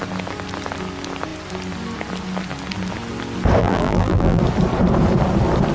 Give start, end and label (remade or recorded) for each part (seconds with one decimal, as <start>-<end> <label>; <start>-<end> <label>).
0.0-3.6 recorded; 3.6-4.4 remade; 4.4-5.7 recorded